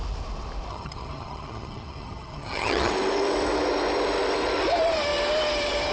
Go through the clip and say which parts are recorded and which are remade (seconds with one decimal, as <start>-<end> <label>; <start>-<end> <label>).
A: 0.0-0.7 recorded; 0.7-2.9 remade; 2.9-5.9 recorded